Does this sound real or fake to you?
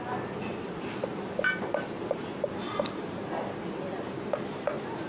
real